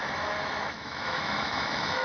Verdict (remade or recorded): remade